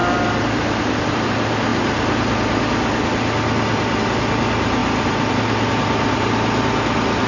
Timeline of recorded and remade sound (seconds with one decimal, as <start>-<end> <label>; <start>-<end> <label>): 0.0-7.3 recorded